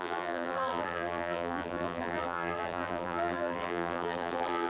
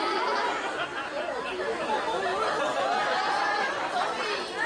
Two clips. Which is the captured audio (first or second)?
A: second